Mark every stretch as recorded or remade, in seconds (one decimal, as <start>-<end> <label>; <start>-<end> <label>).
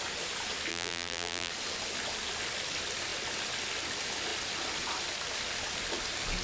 0.0-0.7 recorded; 0.7-1.5 remade; 1.5-6.4 recorded